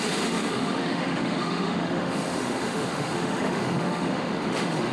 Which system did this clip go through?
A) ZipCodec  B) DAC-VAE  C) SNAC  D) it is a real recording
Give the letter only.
B